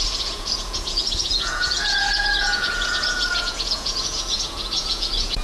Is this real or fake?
fake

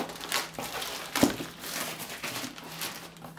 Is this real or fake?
real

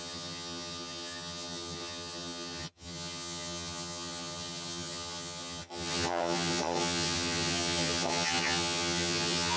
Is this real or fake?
fake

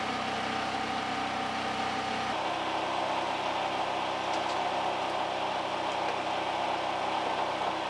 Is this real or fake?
real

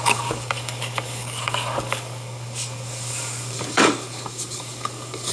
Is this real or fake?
fake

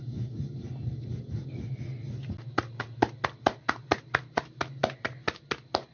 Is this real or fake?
real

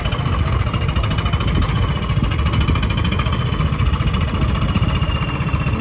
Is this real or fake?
real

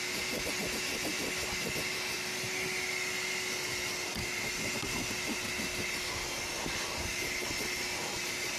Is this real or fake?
real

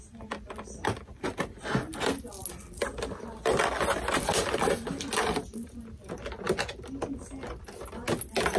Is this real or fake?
real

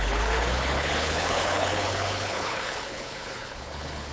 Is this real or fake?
fake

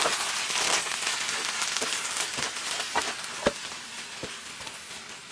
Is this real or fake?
real